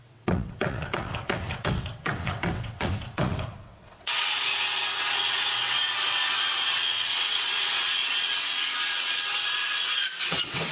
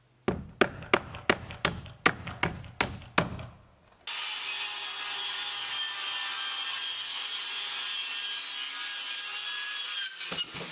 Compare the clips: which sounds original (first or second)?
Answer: second